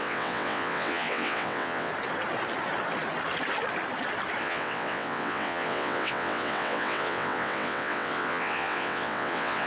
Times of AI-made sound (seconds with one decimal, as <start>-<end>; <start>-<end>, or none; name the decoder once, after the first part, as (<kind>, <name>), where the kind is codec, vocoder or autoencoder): 0.0-1.9 (vocoder, WaveNeXt); 4.4-9.7